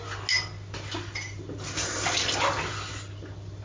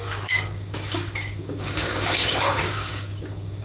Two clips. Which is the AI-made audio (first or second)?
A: second